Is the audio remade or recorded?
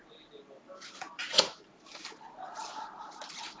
recorded